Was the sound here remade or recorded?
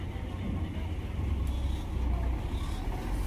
recorded